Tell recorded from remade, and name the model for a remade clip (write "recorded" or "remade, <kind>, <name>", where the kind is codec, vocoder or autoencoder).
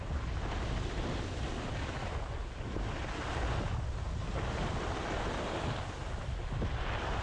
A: recorded